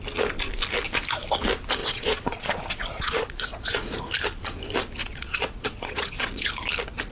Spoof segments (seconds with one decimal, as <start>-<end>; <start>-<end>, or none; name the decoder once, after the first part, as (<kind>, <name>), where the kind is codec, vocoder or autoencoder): 1.8-4.0 (vocoder, Vocos); 5.0-6.5